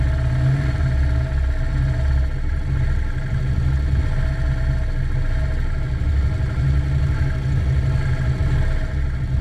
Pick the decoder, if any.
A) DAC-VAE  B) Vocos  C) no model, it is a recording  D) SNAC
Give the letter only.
C